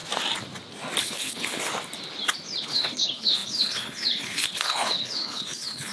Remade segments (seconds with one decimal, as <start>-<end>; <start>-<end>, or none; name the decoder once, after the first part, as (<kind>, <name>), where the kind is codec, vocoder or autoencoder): 1.0-1.7 (codec, HILCodec); 2.6-5.9

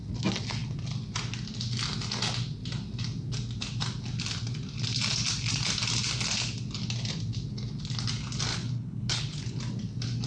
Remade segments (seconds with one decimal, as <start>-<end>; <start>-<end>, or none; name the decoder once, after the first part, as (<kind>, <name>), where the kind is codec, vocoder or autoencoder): 8.5-9.6 (codec, HILCodec)

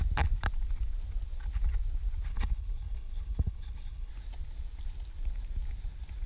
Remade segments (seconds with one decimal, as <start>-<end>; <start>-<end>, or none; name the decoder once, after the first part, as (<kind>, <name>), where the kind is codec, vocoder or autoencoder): 2.3-4.1 (codec, HILCodec)